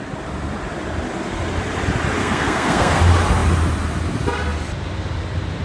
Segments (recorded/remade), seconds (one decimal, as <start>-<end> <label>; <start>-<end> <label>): 0.0-2.2 recorded; 2.2-3.0 remade; 3.0-5.6 recorded